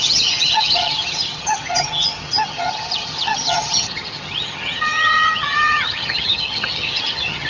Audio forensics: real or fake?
fake